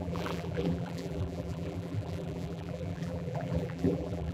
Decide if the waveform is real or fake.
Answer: fake